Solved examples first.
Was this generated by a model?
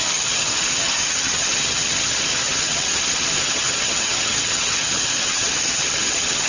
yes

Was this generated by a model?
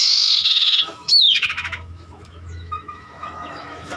yes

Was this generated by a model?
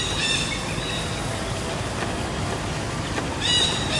no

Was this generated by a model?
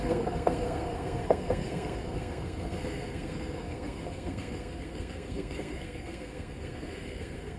yes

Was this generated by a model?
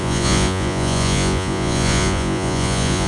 yes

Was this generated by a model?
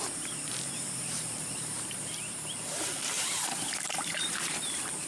yes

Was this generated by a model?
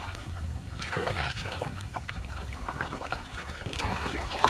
yes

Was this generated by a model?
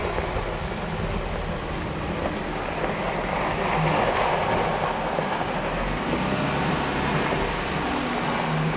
no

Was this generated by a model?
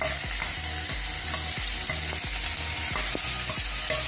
no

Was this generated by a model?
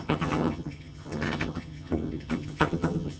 yes